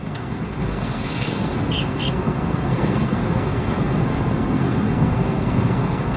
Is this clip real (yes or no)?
no